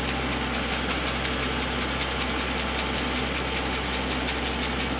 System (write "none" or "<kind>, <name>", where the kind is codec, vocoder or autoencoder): none